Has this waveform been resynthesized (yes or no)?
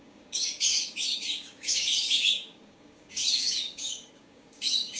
yes